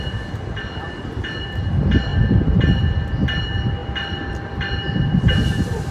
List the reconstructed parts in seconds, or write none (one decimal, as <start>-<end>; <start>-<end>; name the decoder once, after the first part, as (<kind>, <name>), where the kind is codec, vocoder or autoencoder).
none